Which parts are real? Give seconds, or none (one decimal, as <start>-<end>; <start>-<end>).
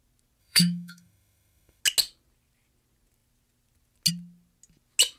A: 0.0-0.4; 1.8-5.2